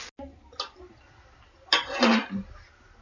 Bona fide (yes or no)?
yes